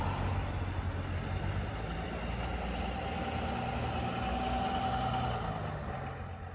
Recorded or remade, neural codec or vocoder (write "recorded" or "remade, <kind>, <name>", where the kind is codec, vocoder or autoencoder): recorded